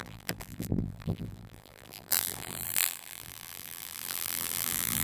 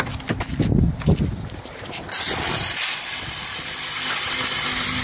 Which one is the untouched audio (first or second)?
second